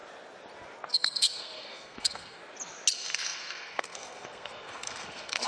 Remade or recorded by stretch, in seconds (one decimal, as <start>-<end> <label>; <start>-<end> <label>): 0.0-0.9 recorded; 0.9-2.4 remade; 2.4-2.9 recorded; 2.9-5.5 remade